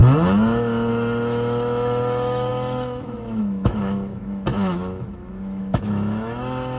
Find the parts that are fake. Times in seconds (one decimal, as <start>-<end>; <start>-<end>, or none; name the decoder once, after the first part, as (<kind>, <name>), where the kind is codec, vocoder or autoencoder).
0.9-6.8 (autoencoder, DAC-VAE)